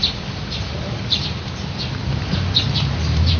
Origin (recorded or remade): recorded